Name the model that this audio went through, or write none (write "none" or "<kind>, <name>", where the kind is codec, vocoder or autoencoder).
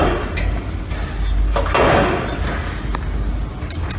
none